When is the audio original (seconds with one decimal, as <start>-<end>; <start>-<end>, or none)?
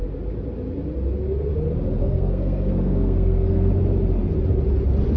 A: 0.0-2.0; 3.7-5.2